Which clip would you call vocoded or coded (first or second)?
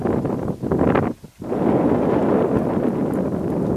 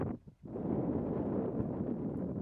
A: second